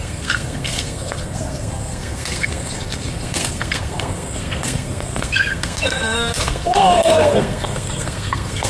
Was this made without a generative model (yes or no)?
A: no